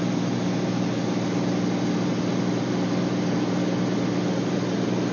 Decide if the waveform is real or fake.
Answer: real